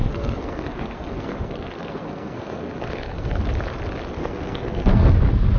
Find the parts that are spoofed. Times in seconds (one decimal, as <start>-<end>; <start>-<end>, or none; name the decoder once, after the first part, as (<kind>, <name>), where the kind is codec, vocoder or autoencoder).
0.0-3.4 (codec, SNAC); 4.2-5.1